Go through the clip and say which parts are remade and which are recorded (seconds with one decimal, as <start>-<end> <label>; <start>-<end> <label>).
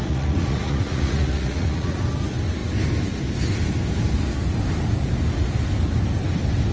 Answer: 0.0-2.0 remade; 2.0-6.7 recorded